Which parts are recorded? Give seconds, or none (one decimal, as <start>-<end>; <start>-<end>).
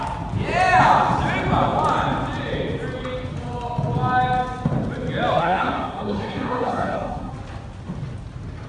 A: 0.0-5.4; 7.3-8.7